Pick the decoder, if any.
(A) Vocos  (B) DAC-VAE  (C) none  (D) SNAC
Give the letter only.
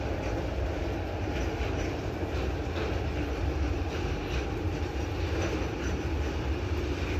C